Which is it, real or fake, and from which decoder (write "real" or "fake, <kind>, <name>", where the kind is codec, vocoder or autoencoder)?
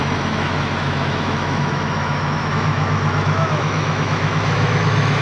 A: fake, autoencoder, DAC-VAE